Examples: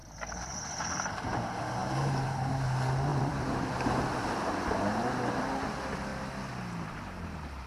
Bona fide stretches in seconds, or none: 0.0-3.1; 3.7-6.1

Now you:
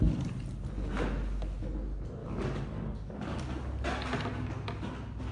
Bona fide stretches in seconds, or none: 0.0-2.2; 3.4-5.3

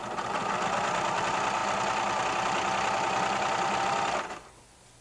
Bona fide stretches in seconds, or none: 0.0-5.0

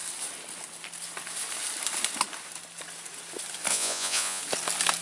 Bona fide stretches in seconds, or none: 0.0-3.7; 4.4-5.0

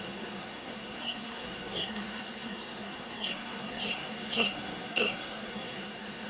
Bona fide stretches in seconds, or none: none

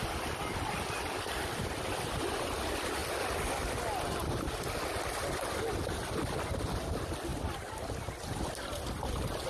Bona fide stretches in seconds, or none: 0.0-9.5